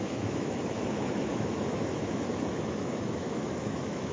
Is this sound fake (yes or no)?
yes